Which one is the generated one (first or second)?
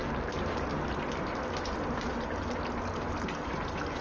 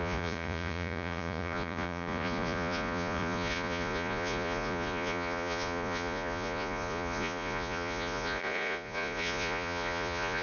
second